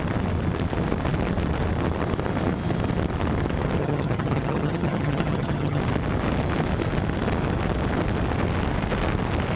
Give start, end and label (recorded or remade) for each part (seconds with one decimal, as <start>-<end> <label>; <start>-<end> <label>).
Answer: 0.0-3.8 recorded; 3.8-5.8 remade; 5.8-9.6 recorded